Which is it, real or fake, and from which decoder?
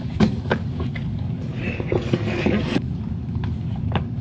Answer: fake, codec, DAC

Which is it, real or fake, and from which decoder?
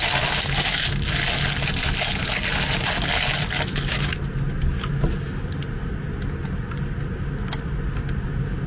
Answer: real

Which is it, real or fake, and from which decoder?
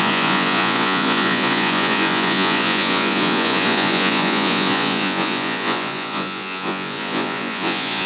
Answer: fake, vocoder, Vocos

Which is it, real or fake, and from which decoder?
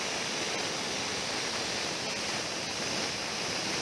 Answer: real